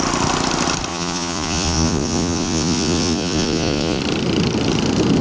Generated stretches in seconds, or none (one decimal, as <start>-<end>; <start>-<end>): 0.9-4.0